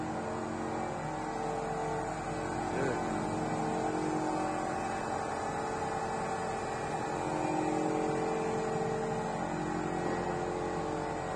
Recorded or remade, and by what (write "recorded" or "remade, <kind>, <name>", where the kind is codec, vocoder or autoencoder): recorded